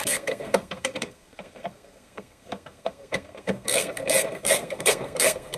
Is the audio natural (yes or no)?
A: no